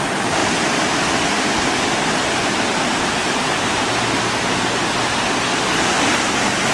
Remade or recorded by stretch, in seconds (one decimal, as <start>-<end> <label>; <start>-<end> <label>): 0.0-6.7 recorded